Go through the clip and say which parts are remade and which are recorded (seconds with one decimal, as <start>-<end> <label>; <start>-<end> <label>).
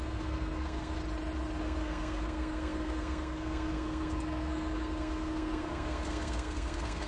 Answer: 0.0-1.0 remade; 1.0-1.6 recorded; 1.6-7.1 remade